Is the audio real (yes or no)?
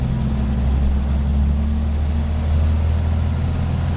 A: yes